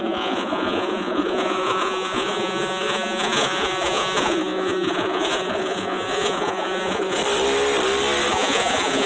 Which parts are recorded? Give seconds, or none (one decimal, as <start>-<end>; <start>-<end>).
7.2-8.3